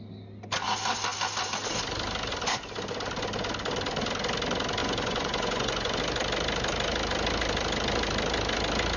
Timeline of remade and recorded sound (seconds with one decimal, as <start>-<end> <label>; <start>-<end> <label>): 0.0-4.8 recorded; 4.8-6.0 remade; 6.0-9.0 recorded